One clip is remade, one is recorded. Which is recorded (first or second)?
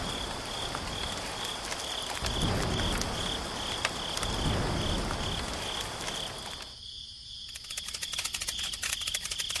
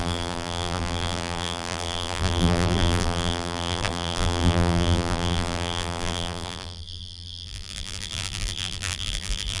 first